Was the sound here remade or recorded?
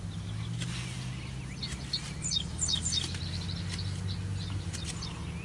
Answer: recorded